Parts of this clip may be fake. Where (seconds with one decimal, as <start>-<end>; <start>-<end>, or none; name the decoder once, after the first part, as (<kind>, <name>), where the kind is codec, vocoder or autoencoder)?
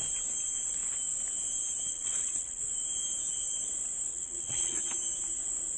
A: 1.9-2.6 (vocoder, WaveNeXt); 4.1-4.8